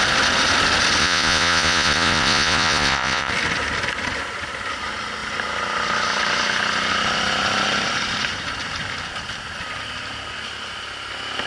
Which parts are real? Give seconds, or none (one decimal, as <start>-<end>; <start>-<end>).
0.0-1.0; 3.3-11.5